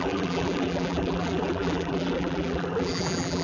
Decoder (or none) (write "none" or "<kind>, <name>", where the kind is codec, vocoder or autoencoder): vocoder, BigVGAN v2